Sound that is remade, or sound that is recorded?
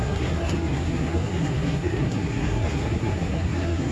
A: remade